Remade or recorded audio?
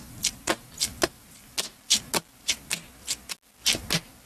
recorded